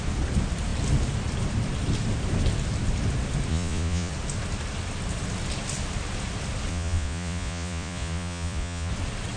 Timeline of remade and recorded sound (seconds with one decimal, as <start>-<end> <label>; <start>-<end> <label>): 0.0-3.5 recorded; 3.5-4.1 remade; 4.1-6.7 recorded; 6.7-8.9 remade; 8.9-9.4 recorded